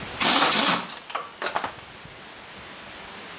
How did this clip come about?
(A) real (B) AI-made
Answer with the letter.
A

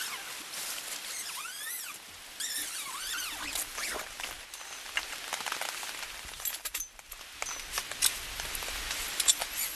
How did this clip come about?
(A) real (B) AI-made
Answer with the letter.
A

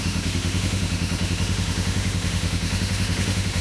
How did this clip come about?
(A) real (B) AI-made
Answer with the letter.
B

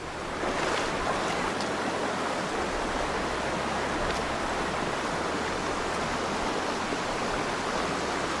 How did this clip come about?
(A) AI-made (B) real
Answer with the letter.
B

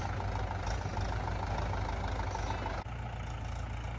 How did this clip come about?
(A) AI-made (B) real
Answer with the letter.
B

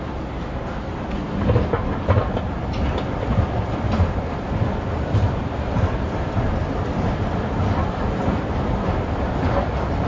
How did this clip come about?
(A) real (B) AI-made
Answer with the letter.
B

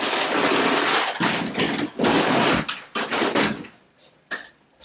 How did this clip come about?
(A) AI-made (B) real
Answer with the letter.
B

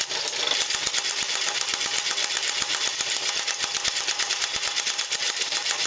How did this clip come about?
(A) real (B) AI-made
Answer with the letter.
B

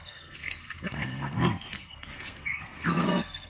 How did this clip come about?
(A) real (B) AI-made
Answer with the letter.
B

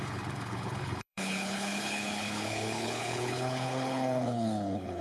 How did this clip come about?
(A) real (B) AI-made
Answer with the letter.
B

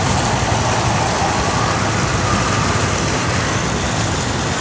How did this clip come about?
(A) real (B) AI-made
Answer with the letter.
A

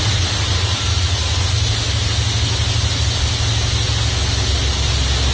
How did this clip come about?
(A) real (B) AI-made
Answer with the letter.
A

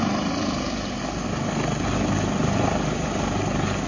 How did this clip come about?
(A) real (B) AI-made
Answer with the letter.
A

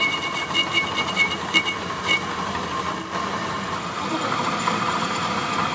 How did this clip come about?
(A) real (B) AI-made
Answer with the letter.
A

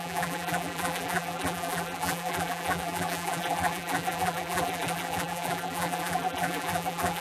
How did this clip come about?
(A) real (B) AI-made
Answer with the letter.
B